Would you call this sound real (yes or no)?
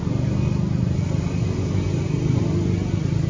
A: yes